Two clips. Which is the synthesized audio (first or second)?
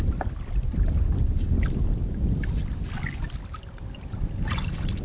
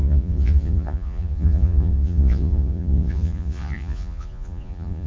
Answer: second